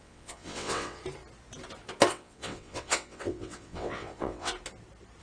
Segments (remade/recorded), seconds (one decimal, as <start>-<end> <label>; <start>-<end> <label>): 0.0-1.0 remade; 1.0-2.1 recorded; 2.1-4.5 remade; 4.5-5.2 recorded